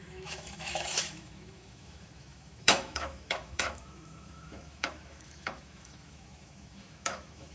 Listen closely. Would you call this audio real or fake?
fake